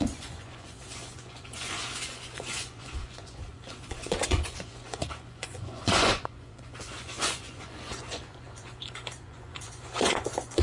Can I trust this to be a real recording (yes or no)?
no